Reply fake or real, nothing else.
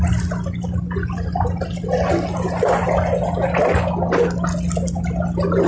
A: real